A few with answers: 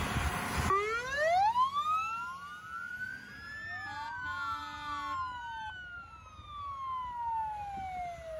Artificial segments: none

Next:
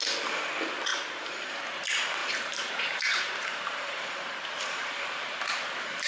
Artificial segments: 0.9-1.5 (vocoder, BigVGAN v2); 2.2-6.1